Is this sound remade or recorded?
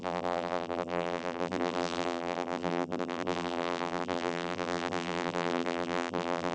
remade